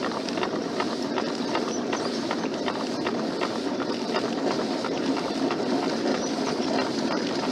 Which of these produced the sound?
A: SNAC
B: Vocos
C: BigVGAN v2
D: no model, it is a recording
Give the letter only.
C